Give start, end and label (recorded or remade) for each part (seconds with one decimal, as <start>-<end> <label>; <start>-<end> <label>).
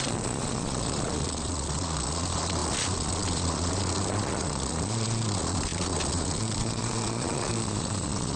0.0-8.4 remade